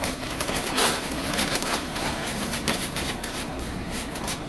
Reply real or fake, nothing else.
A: fake